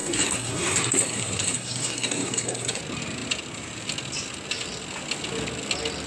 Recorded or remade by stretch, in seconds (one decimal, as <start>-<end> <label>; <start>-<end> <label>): 0.0-2.8 remade; 2.8-6.1 recorded